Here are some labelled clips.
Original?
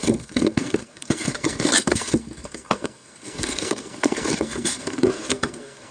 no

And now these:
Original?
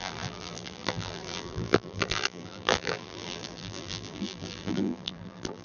no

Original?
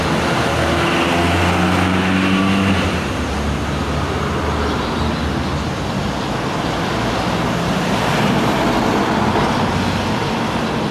yes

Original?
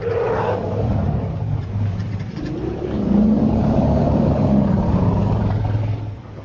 no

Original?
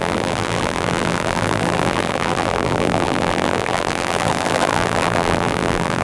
no